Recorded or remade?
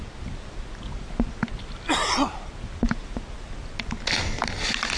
recorded